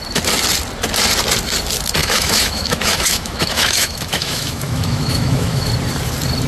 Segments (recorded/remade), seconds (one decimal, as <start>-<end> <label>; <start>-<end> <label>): 0.0-2.0 recorded; 2.0-5.7 remade; 5.7-6.5 recorded